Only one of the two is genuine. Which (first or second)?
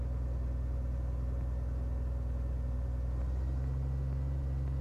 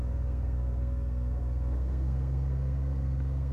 first